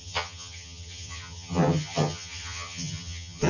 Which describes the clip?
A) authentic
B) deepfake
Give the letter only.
B